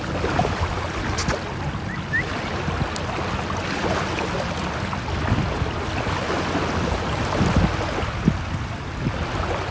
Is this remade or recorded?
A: recorded